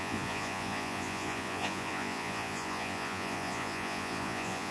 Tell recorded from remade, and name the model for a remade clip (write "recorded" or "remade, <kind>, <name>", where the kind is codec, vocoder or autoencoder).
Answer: remade, vocoder, Vocos